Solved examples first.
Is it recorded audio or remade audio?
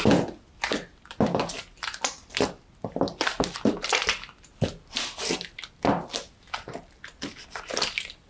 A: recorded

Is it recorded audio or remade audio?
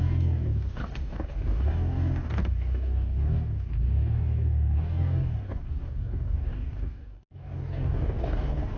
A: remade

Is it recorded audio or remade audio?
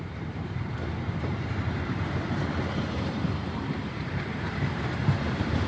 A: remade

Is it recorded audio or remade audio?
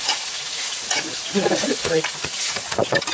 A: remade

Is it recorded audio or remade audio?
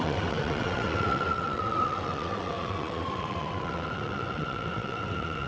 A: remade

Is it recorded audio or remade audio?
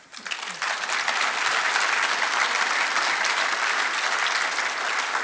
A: recorded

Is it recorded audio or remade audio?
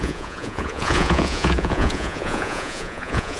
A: remade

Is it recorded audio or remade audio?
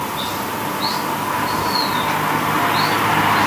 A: recorded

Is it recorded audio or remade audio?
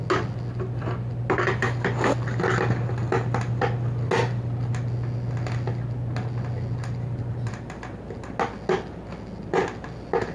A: recorded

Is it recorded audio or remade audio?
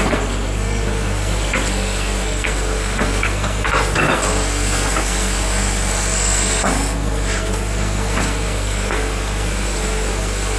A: remade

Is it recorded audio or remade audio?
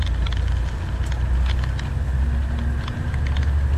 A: recorded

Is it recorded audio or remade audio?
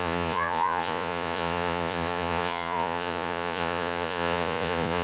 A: remade